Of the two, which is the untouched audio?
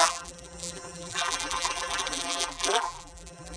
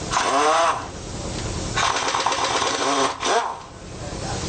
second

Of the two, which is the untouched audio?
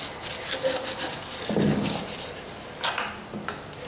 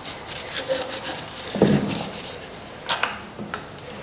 first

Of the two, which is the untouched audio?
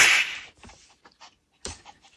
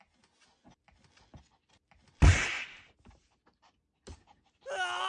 second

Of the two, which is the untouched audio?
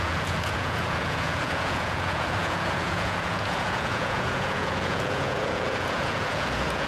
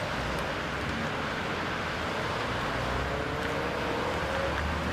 second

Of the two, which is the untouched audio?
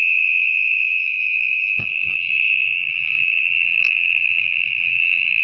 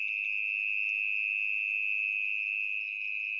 second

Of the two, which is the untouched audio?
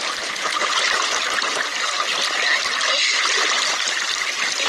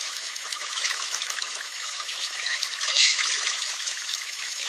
first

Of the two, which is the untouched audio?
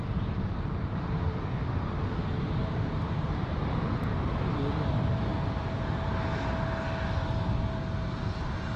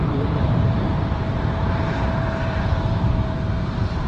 first